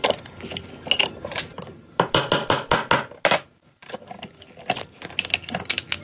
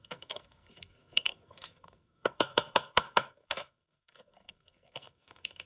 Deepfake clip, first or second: second